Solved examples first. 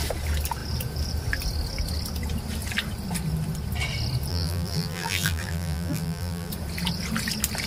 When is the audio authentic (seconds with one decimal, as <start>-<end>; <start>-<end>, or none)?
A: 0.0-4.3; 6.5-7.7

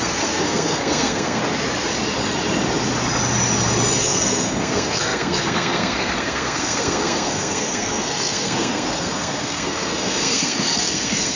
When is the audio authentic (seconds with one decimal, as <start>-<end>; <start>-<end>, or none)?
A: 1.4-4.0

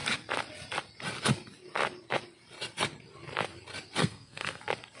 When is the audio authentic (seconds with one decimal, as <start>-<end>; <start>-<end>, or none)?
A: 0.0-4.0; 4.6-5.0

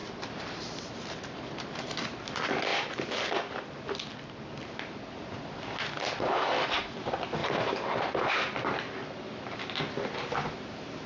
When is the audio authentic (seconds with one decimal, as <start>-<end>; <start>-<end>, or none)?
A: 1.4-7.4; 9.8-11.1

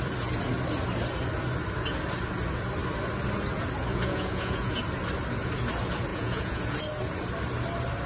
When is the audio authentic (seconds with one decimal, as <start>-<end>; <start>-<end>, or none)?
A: 0.0-3.9; 4.8-6.1; 6.8-8.1

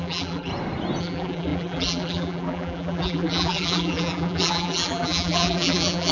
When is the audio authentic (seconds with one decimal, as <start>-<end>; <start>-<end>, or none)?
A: 0.5-1.0